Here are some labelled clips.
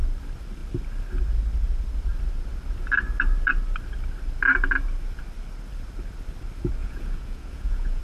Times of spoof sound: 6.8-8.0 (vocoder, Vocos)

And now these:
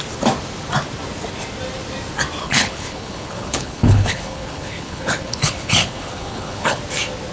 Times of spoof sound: 2.4-6.8 (codec, HILCodec)